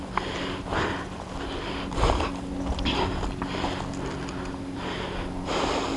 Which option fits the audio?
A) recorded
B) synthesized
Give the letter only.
A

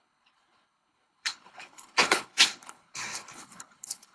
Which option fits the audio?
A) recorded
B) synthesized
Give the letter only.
B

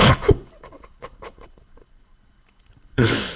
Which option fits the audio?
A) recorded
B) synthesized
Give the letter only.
B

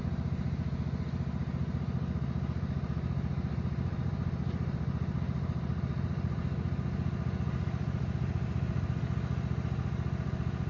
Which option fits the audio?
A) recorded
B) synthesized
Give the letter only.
A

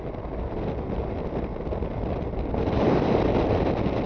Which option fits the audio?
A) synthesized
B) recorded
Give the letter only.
B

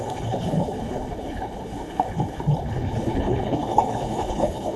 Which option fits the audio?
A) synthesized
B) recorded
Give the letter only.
A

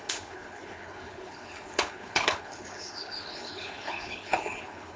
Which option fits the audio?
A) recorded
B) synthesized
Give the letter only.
B